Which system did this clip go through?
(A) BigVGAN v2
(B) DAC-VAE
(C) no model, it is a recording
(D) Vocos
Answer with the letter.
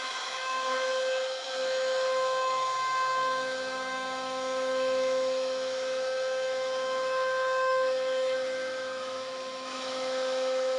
B